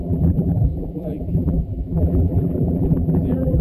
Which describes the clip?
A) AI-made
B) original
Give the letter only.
A